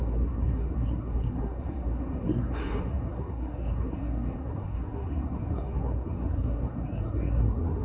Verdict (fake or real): fake